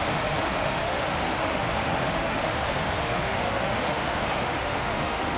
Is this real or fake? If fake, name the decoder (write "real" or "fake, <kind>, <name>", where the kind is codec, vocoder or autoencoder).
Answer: fake, autoencoder, DAC-VAE